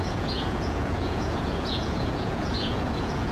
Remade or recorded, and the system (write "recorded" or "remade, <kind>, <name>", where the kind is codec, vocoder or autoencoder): remade, vocoder, Vocos